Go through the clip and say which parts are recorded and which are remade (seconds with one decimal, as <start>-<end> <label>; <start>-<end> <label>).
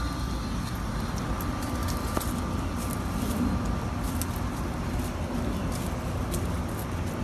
0.0-7.2 recorded